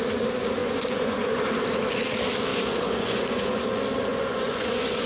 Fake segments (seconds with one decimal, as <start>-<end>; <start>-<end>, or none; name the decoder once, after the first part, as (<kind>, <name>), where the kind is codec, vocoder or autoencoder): 0.6-1.4 (vocoder, Vocos); 2.5-3.6; 4.1-5.1